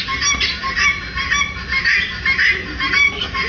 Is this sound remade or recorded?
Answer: recorded